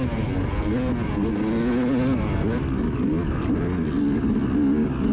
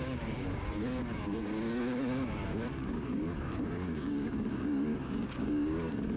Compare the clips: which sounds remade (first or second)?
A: second